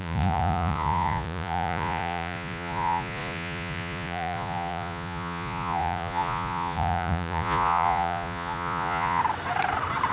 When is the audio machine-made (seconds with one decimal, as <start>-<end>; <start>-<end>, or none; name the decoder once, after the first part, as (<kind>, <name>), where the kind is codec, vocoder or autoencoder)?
0.0-9.2 (vocoder, Vocos)